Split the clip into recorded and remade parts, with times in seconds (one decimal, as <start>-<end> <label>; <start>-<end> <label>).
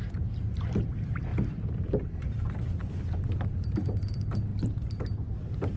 0.0-1.3 remade; 1.3-1.8 recorded; 1.8-5.8 remade